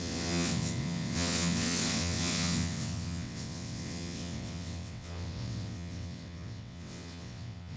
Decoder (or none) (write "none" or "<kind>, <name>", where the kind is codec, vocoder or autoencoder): vocoder, WaveNeXt